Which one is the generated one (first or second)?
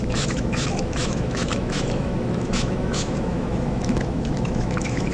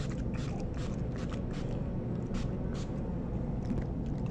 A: first